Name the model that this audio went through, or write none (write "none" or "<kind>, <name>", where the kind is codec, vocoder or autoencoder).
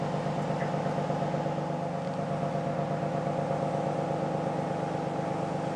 none